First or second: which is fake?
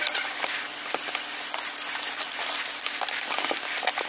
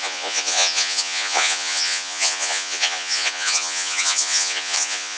second